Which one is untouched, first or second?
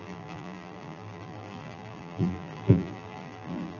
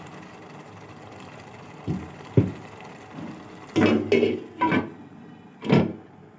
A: second